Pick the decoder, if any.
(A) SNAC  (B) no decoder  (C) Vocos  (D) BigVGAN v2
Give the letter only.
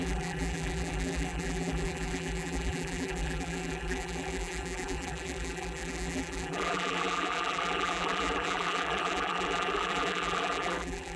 D